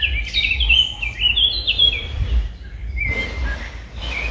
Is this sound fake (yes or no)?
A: no